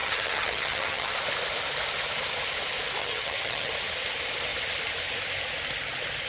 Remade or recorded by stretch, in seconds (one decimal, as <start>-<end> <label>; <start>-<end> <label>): 0.0-1.1 remade; 1.1-3.0 recorded; 3.0-3.7 remade; 3.7-6.3 recorded